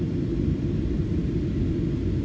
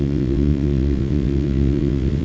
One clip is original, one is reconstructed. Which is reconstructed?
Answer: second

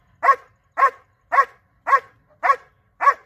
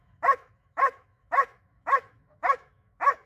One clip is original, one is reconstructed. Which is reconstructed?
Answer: second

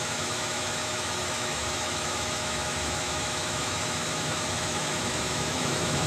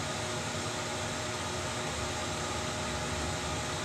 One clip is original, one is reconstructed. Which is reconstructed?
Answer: first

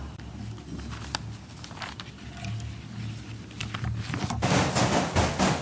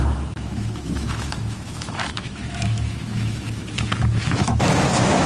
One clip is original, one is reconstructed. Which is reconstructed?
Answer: second